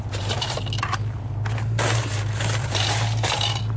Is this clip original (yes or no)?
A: yes